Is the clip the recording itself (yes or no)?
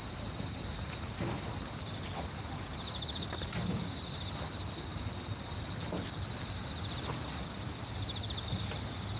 yes